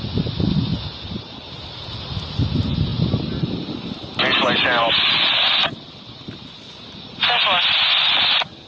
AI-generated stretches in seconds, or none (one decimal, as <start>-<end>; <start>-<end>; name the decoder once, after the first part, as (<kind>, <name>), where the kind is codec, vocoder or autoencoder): none